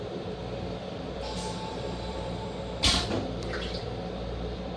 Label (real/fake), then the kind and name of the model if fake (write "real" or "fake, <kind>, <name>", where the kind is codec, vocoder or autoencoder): fake, vocoder, BigVGAN v2